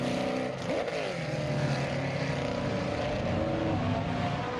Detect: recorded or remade recorded